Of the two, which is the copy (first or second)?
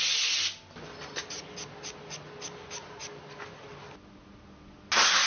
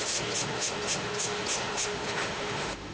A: second